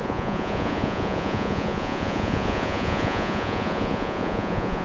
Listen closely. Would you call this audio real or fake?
fake